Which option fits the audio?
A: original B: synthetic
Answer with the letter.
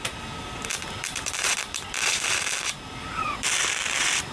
B